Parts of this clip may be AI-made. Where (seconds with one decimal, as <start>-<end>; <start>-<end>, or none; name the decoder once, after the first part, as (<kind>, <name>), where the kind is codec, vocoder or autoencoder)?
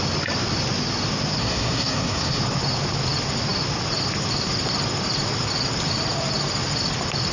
1.4-2.4 (codec, SNAC)